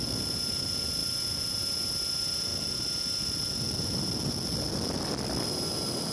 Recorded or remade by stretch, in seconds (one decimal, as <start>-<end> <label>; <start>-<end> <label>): 0.0-6.1 recorded